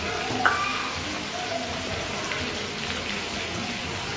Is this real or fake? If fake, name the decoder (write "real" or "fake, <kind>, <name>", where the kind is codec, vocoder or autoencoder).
real